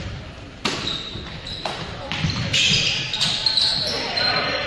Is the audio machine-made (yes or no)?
yes